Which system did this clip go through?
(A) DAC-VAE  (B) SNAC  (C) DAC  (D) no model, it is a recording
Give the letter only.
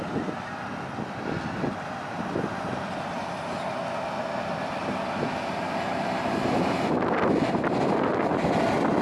D